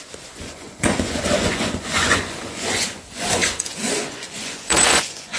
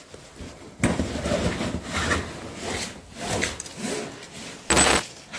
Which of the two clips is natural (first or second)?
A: second